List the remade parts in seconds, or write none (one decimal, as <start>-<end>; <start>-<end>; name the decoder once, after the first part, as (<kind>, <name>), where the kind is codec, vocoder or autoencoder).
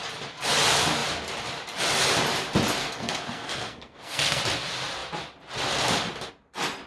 2.8-4.4 (codec, SNAC)